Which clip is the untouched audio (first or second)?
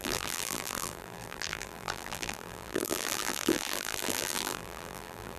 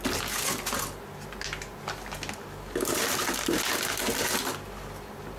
second